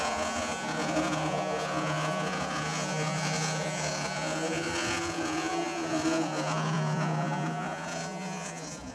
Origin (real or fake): fake